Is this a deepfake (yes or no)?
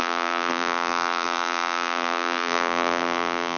yes